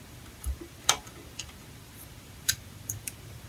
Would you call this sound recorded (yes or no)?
no